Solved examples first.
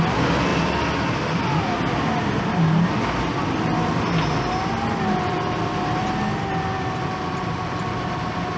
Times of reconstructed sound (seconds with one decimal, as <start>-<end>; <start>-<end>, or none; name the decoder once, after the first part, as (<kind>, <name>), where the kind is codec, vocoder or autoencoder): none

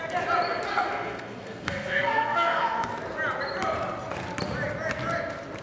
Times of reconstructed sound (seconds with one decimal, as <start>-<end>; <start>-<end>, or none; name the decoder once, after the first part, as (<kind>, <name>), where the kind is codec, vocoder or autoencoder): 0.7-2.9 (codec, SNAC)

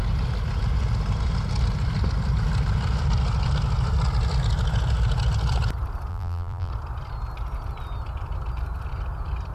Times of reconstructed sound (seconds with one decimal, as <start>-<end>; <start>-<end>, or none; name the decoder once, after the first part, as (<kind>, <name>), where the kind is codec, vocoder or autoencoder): 6.1-6.7 (vocoder, BigVGAN v2)